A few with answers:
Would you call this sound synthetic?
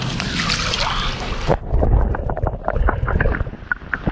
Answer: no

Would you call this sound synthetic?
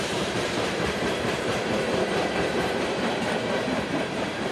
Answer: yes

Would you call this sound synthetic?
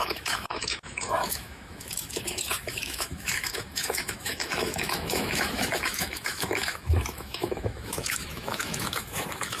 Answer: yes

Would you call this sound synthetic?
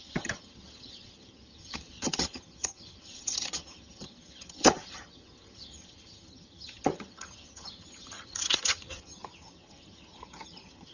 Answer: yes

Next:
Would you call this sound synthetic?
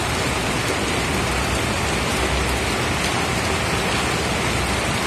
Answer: no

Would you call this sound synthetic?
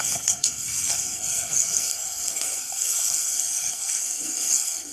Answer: yes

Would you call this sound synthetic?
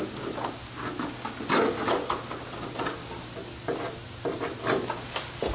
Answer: no